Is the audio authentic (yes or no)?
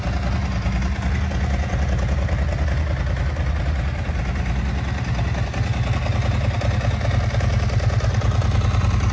yes